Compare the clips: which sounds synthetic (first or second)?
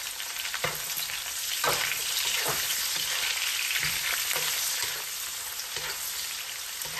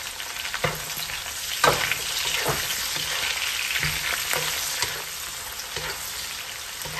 first